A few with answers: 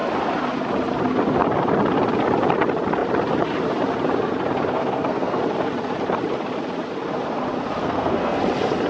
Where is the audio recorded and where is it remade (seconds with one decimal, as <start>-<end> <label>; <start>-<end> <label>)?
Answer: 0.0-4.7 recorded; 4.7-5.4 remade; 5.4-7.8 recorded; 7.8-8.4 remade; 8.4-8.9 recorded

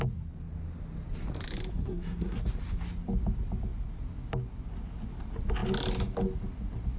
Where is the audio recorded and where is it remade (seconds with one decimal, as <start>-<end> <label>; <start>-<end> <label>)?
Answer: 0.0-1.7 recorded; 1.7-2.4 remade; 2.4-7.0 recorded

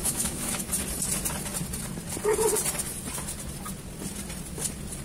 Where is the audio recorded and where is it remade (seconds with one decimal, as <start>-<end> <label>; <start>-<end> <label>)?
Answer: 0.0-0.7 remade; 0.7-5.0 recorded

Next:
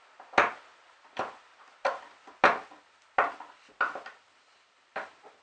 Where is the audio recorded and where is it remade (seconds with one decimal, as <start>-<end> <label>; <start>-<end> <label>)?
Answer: 0.0-5.4 recorded

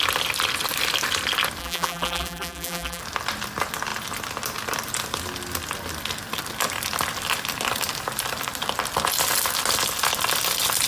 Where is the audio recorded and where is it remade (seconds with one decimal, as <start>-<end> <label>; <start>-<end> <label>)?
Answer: 0.0-1.6 recorded; 1.6-3.0 remade; 3.0-10.9 recorded